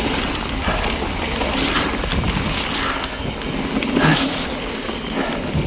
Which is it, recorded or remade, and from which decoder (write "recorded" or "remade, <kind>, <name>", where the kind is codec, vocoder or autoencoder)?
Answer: recorded